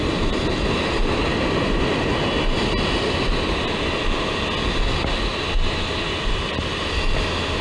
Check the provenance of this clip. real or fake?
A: real